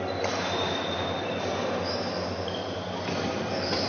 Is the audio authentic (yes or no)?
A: yes